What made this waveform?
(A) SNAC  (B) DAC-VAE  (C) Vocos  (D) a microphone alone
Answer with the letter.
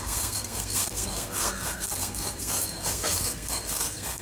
A